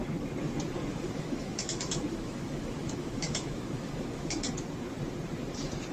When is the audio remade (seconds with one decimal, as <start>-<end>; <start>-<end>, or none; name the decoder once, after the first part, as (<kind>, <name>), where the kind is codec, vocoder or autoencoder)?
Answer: 0.9-4.4 (autoencoder, DAC-VAE)